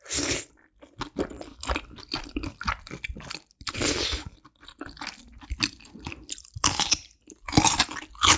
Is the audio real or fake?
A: real